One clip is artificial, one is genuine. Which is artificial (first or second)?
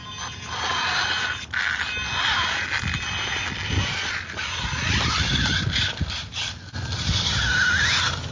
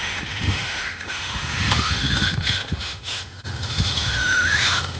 second